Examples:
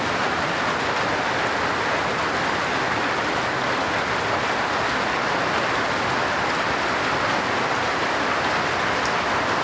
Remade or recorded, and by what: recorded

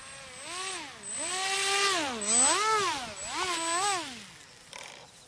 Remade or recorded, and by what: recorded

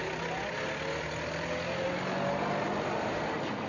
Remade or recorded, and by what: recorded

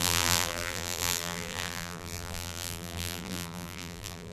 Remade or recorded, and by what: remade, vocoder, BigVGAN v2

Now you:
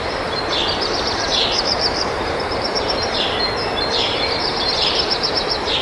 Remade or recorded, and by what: remade, vocoder, BigVGAN v2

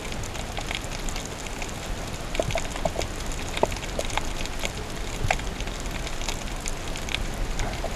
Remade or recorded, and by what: recorded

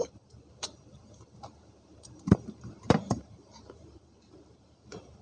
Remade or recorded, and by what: remade, vocoder, BigVGAN v2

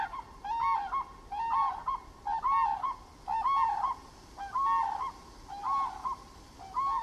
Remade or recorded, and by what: recorded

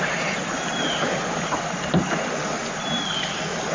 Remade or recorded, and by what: remade, vocoder, BigVGAN v2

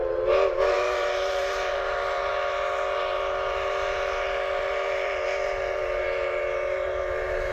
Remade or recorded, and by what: remade, vocoder, BigVGAN v2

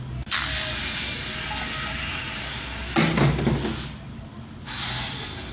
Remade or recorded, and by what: remade, vocoder, BigVGAN v2